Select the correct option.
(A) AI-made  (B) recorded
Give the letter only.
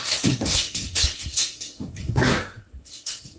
A